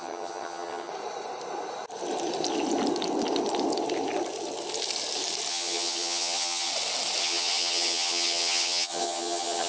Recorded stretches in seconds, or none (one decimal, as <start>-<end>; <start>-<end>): 0.9-5.5; 6.7-7.2